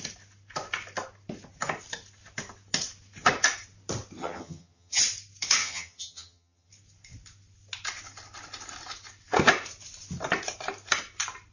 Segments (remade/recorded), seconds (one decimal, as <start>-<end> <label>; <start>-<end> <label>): 0.0-4.2 recorded; 4.2-5.0 remade; 5.0-5.6 recorded; 5.6-6.7 remade; 6.7-11.5 recorded